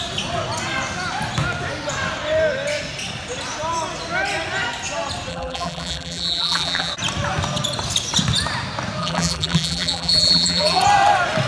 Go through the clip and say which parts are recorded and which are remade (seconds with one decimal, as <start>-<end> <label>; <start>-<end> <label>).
0.0-5.3 recorded; 5.3-6.9 remade; 6.9-9.0 recorded; 9.0-10.8 remade; 10.8-11.5 recorded